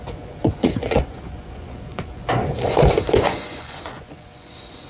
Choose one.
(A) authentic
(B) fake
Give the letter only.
B